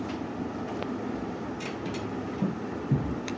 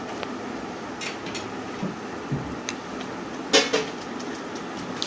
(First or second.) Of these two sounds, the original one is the second